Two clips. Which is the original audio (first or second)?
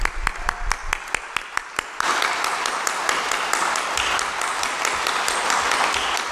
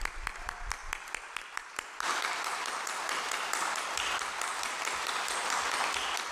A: first